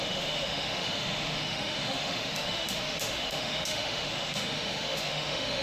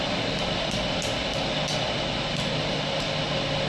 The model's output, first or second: first